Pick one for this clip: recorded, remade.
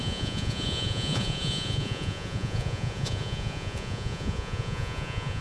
remade